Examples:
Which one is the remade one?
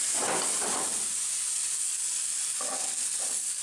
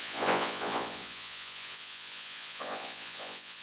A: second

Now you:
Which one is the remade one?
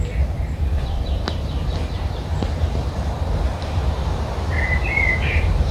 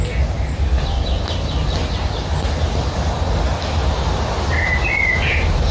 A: first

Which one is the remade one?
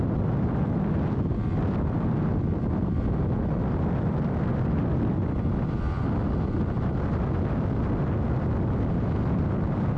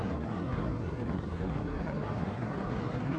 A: second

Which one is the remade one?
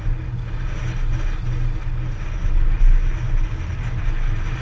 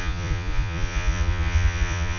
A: second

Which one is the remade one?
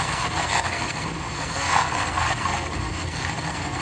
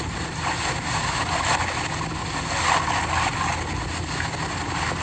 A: first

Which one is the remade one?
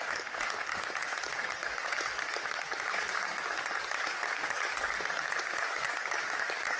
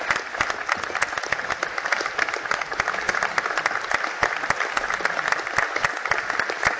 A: first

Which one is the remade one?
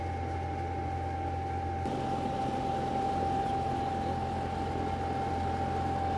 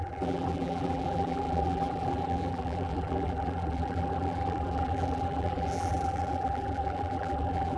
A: second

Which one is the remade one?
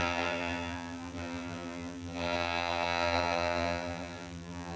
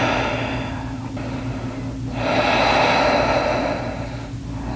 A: first